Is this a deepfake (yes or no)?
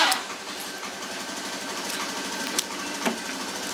no